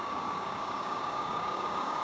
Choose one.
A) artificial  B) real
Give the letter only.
A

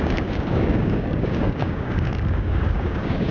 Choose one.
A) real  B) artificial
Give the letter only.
B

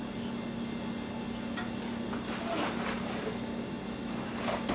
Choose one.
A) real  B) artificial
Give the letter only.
A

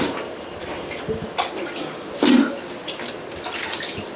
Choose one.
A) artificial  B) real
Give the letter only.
B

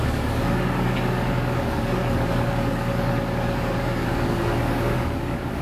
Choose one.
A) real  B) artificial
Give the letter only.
B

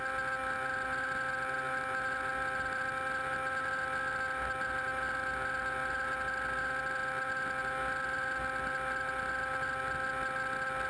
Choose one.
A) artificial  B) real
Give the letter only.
B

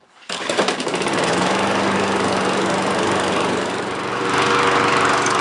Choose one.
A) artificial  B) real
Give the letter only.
A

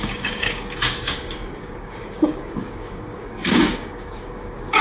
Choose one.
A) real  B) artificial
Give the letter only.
B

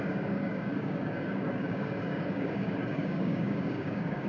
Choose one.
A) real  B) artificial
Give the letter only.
B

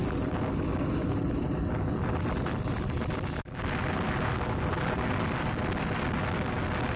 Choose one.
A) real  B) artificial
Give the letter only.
A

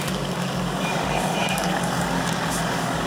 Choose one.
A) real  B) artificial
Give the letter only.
B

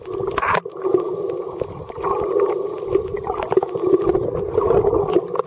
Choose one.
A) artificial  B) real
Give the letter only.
B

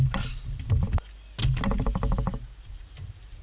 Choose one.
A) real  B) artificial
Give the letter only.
A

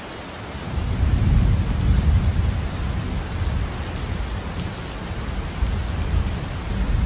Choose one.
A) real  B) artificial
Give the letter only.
A